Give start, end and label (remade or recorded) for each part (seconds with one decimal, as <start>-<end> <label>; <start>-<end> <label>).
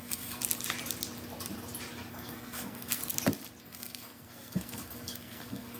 0.0-0.4 remade; 0.4-2.1 recorded; 2.1-3.0 remade; 3.0-3.6 recorded; 3.6-5.8 remade